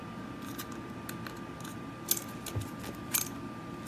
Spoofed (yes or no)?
no